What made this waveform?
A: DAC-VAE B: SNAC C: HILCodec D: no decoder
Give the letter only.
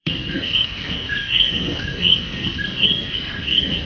B